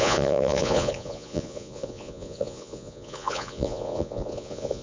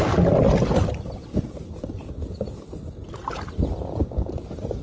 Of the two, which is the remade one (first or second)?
first